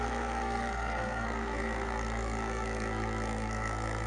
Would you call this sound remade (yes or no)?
yes